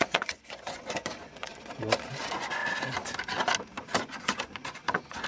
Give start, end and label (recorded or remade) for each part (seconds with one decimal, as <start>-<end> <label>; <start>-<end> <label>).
0.0-1.5 remade; 1.5-2.2 recorded; 2.2-2.6 remade; 2.6-4.0 recorded; 4.0-5.3 remade